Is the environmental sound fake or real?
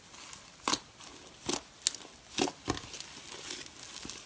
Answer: real